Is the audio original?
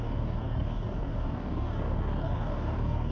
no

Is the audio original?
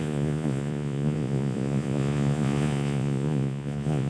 no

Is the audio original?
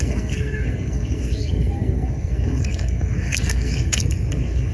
no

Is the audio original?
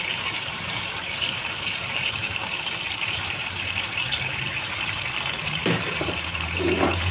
no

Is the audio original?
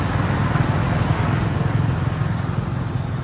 yes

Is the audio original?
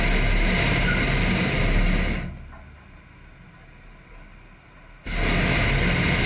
yes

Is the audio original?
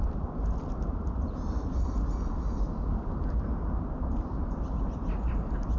yes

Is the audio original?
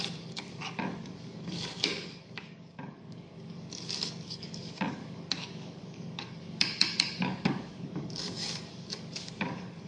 no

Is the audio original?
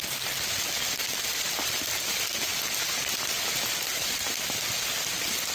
yes